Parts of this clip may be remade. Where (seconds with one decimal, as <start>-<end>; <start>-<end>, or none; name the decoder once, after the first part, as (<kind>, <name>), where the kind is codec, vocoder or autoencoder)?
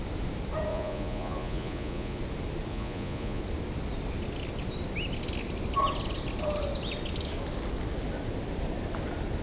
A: 0.7-2.2 (vocoder, Vocos); 2.7-3.4